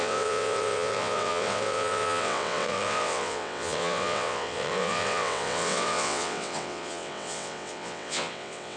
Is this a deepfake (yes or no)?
yes